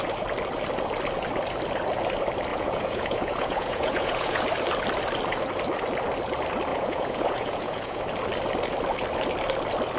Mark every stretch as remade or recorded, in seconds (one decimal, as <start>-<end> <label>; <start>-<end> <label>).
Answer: 0.0-2.5 recorded; 2.5-4.4 remade; 4.4-6.7 recorded; 6.7-8.0 remade; 8.0-10.0 recorded